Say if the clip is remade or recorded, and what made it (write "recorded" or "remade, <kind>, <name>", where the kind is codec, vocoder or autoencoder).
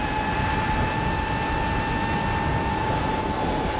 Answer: recorded